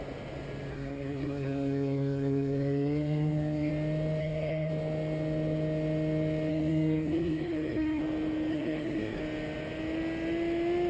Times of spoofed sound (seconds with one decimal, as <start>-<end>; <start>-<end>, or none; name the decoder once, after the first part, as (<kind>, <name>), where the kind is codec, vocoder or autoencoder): 0.7-3.7 (codec, SNAC); 4.2-4.7; 6.5-8.0; 8.5-9.2